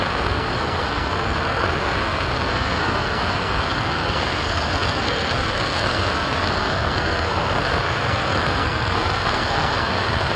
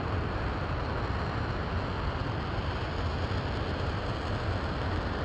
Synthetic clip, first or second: first